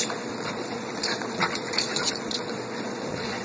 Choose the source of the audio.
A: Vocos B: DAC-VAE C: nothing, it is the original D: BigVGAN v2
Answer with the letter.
A